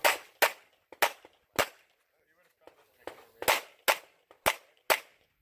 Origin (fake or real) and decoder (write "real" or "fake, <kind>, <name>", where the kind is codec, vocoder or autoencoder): real